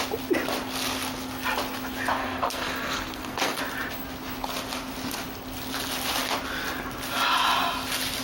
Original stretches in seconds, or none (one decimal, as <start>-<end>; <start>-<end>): 0.0-2.2; 3.6-8.2